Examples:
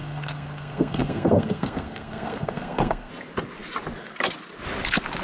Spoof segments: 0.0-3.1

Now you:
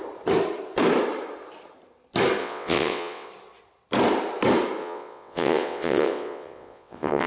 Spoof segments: 2.4-3.3; 4.8-7.3

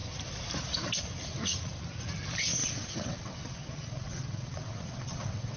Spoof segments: 2.6-5.6

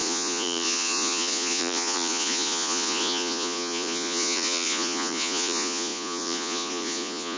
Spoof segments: 0.0-7.4

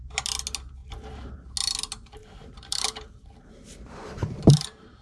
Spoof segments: 0.8-1.4; 2.2-5.0

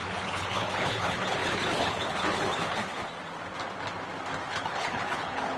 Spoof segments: 0.0-2.9; 4.5-5.6

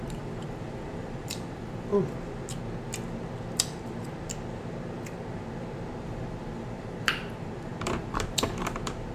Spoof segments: 0.0-1.9; 6.1-9.1